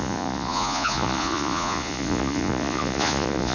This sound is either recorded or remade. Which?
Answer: remade